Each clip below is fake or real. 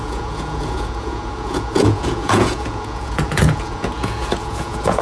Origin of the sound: fake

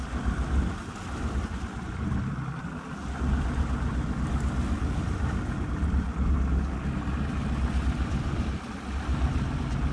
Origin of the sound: real